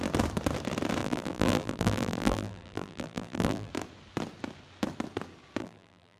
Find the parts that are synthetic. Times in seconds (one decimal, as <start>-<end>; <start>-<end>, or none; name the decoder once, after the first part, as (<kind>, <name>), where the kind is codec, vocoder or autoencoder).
1.0-3.7 (vocoder, BigVGAN v2); 5.6-6.2